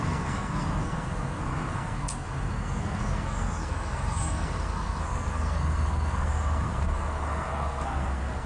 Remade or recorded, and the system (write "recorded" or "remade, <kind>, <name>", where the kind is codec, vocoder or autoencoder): remade, codec, SNAC